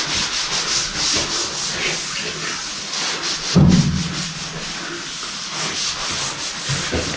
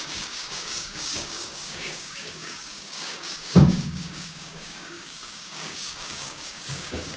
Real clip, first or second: first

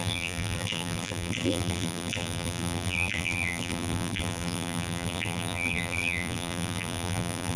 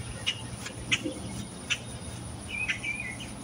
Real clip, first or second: second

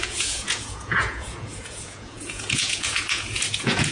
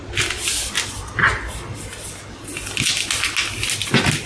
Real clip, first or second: second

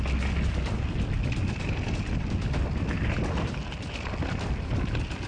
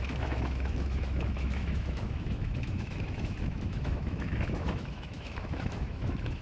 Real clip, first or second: first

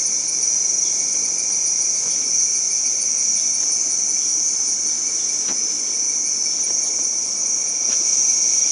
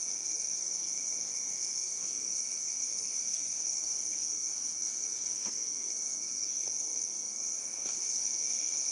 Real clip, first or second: first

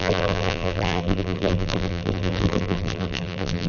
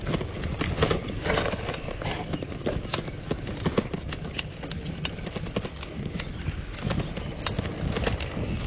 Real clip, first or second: second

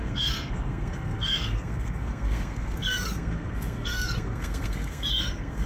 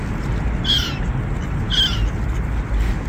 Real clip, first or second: second